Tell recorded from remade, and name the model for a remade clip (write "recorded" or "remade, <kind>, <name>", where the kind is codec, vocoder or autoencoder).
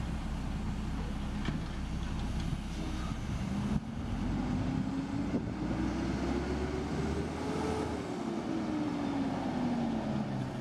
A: recorded